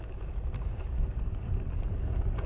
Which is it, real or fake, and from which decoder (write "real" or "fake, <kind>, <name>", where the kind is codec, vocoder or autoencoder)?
real